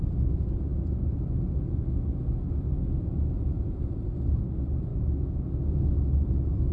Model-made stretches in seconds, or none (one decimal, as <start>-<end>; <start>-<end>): 4.9-5.6